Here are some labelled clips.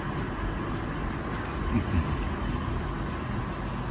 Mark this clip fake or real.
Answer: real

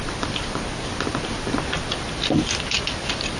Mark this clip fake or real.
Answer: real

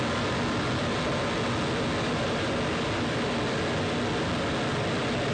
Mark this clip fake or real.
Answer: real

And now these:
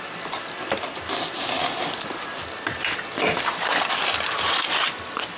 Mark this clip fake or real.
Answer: real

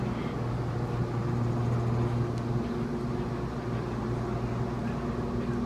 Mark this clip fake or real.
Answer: real